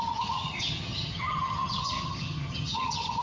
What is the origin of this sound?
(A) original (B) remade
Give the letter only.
B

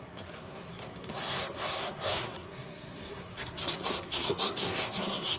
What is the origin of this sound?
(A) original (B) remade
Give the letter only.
B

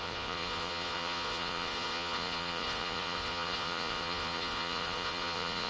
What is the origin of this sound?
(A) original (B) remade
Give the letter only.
B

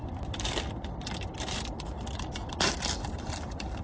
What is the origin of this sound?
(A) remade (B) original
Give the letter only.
A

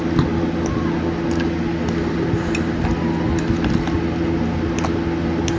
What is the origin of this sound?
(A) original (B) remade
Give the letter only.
A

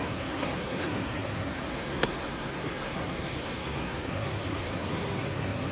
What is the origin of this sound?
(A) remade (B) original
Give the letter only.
A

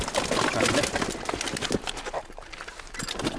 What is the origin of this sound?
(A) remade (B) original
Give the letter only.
B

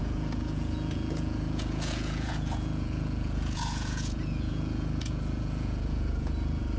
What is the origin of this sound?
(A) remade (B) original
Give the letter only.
A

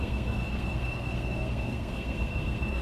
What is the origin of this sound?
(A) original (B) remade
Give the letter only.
B